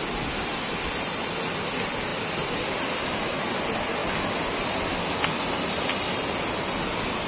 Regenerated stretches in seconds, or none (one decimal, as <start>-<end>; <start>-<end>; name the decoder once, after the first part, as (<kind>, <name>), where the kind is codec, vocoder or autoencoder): none